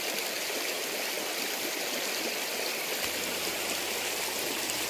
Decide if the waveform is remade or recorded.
recorded